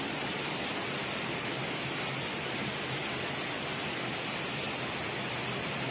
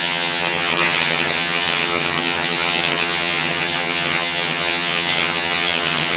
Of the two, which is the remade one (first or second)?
second